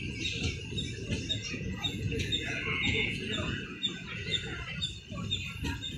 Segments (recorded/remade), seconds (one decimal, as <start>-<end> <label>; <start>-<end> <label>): 0.0-1.4 recorded; 1.4-4.6 remade; 4.6-6.0 recorded